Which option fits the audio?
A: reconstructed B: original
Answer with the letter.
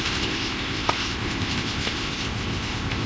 A